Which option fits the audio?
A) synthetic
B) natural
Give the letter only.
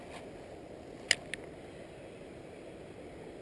B